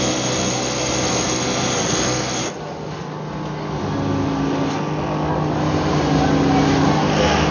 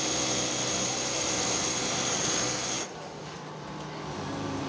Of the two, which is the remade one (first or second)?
second